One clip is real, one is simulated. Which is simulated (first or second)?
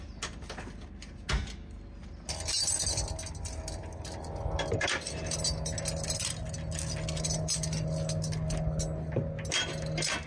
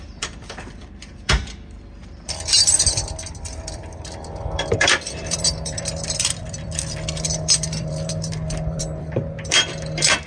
second